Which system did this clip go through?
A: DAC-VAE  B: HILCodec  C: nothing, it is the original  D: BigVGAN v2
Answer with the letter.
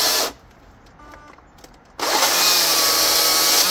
C